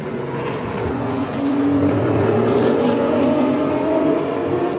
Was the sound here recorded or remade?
remade